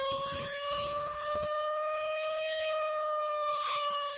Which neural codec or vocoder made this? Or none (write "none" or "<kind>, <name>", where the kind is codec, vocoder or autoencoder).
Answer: codec, HILCodec